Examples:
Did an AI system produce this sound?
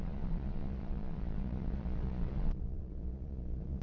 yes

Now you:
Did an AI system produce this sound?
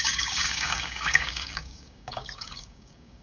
yes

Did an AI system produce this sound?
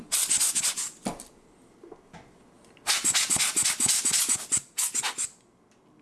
no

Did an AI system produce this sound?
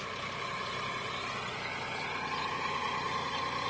no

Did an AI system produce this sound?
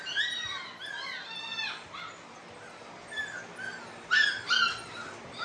no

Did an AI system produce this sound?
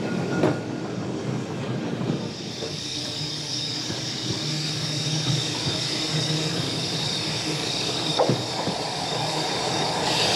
yes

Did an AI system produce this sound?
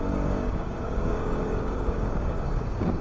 yes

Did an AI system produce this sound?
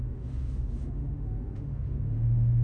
yes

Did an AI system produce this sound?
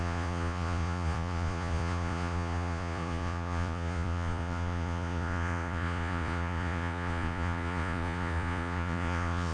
yes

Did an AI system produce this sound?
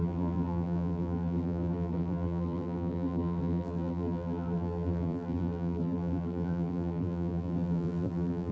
yes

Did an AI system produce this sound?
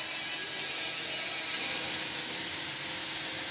no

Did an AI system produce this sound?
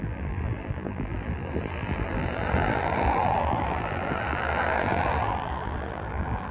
yes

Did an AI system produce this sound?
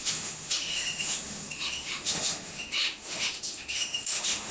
yes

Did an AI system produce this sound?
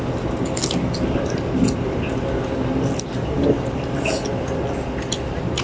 no